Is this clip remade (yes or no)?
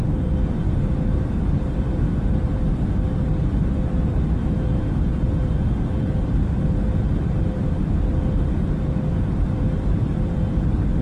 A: yes